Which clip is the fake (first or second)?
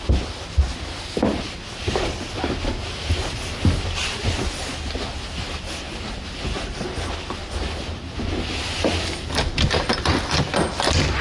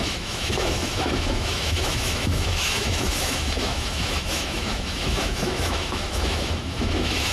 second